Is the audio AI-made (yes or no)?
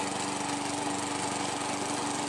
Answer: no